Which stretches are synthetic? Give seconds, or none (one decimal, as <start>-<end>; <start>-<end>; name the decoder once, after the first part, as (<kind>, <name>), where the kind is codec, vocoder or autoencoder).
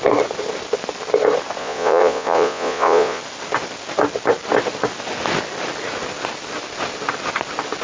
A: 1.6-3.2 (vocoder, Vocos)